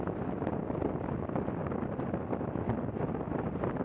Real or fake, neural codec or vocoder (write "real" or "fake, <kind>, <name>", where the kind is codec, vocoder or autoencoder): real